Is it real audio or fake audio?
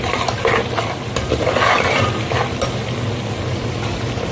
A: real